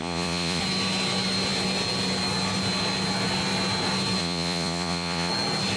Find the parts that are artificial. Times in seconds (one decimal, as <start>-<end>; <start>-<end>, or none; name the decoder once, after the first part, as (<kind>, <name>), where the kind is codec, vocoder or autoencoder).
0.0-0.6 (vocoder, Vocos); 4.2-5.3